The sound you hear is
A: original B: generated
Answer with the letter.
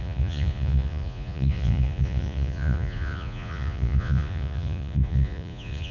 B